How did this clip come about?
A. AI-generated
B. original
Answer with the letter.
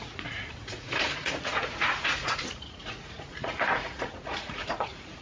A